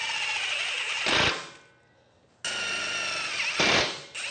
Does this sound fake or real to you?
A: real